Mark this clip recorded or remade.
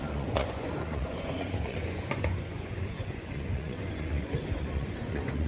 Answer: remade